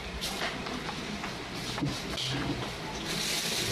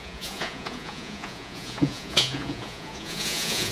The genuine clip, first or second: first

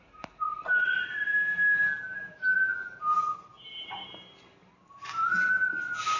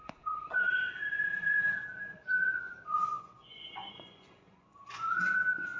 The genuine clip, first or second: first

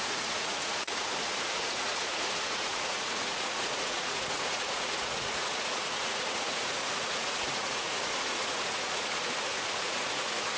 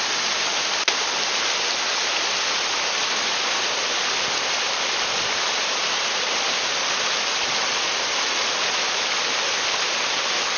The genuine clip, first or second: second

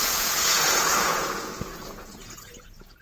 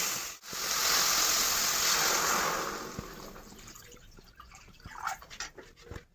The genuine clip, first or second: second